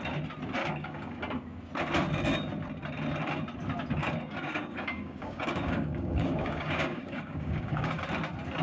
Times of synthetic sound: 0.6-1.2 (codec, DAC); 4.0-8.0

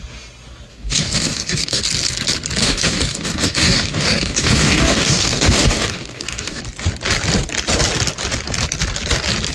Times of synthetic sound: 0.7-1.8 (codec, DAC); 2.6-6.6

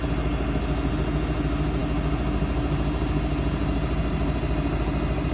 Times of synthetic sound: none

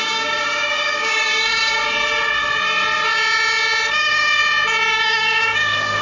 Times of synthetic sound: 0.0-1.8 (codec, DAC); 3.9-4.4; 4.9-6.0

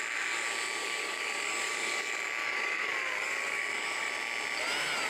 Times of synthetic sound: 0.8-2.0 (codec, DAC); 2.4-4.1

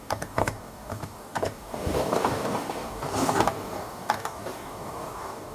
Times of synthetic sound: 0.0-5.5 (codec, DAC)

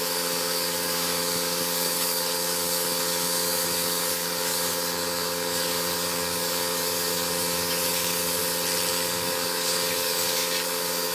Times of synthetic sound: 0.0-8.4 (codec, DAC); 8.9-11.1

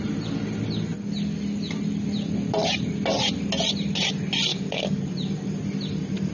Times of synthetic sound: 4.5-5.0 (codec, DAC)